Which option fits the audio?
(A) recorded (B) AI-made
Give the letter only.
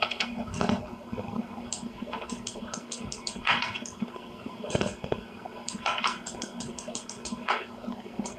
B